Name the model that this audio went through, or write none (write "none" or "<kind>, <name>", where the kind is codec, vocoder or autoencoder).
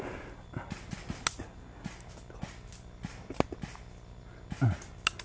none